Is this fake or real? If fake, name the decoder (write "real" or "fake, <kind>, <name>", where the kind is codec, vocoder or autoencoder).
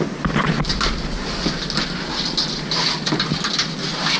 real